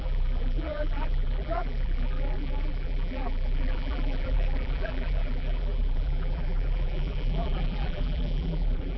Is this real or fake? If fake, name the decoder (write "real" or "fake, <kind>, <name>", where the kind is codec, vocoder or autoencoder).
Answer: fake, vocoder, BigVGAN v2